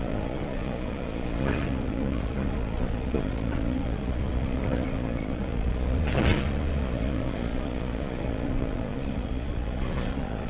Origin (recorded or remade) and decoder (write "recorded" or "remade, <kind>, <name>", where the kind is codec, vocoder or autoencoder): remade, vocoder, Vocos